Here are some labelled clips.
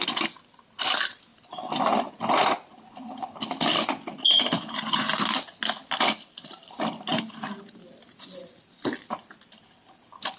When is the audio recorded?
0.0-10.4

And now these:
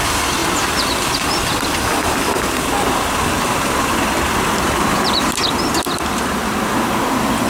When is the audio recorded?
6.4-7.5

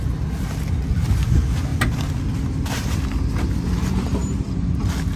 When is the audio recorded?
0.0-4.2; 4.8-5.2